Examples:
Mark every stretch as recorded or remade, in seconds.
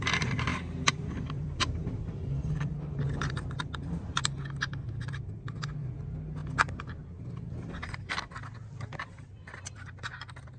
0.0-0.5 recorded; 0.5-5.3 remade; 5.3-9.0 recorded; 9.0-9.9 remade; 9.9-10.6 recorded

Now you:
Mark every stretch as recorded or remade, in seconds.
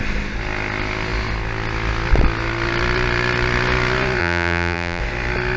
0.0-4.2 recorded; 4.2-5.0 remade; 5.0-5.6 recorded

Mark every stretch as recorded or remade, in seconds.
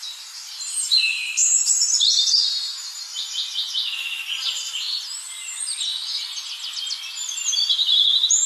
0.0-1.4 remade; 1.4-4.4 recorded; 4.4-5.9 remade; 5.9-7.9 recorded; 7.9-8.5 remade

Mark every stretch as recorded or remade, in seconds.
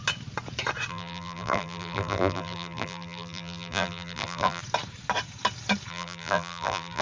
0.0-0.9 recorded; 0.9-4.6 remade; 4.6-5.9 recorded; 5.9-7.0 remade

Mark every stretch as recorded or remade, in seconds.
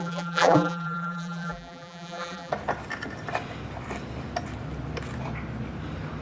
0.0-2.5 remade; 2.5-6.2 recorded